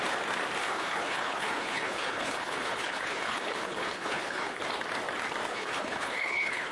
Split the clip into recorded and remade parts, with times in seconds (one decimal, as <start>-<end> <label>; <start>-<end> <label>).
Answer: 0.0-0.6 recorded; 0.6-4.6 remade; 4.6-5.5 recorded; 5.5-6.7 remade